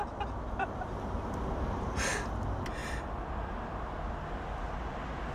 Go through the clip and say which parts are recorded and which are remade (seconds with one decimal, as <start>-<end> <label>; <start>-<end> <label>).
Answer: 0.0-5.3 recorded